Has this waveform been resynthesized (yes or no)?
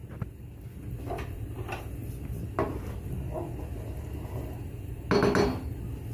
no